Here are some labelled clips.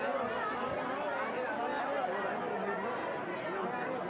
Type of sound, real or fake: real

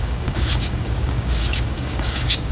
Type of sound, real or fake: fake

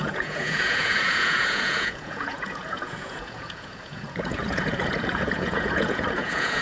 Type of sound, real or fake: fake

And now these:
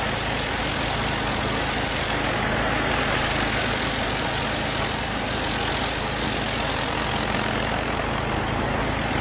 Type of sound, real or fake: real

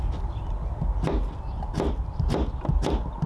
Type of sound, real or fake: real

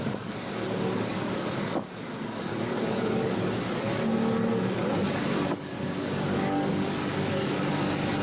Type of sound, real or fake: fake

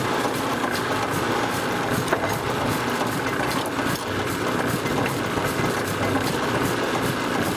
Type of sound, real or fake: real